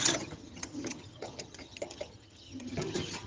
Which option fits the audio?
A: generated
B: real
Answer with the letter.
A